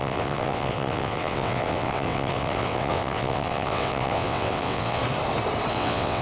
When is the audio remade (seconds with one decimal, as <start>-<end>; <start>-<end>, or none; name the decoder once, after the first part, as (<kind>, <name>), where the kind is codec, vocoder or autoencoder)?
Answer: 0.0-5.0 (vocoder, WaveNeXt); 5.7-6.2